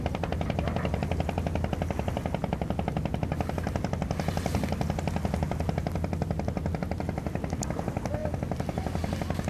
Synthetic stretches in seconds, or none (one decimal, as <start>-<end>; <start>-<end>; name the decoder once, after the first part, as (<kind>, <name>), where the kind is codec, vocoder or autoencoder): none